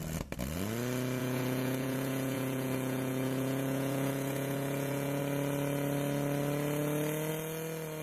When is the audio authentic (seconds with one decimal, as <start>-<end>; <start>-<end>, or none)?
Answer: 0.0-1.2; 5.2-8.0